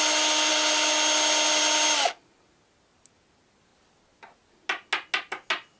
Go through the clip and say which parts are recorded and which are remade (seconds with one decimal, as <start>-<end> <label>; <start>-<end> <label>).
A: 0.0-5.8 recorded